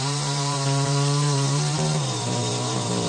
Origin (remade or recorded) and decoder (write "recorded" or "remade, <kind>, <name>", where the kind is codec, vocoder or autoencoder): remade, vocoder, BigVGAN v2